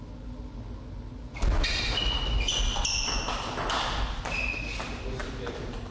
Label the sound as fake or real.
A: real